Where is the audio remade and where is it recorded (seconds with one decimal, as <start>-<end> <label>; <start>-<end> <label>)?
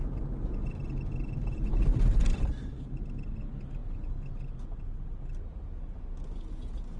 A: 0.0-1.7 recorded; 1.7-2.9 remade; 2.9-7.0 recorded